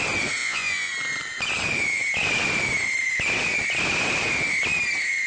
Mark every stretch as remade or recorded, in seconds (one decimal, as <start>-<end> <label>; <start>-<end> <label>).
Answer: 0.0-0.4 recorded; 0.4-0.9 remade; 0.9-5.3 recorded